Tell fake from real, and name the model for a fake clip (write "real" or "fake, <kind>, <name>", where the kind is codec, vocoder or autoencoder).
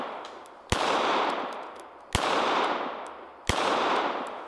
real